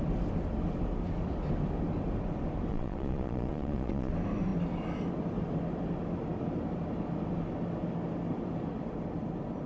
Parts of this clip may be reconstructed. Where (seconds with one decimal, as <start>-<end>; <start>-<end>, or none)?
2.7-4.1